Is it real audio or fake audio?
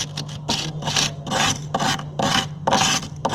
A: real